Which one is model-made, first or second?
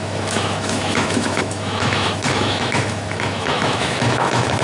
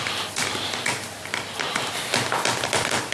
first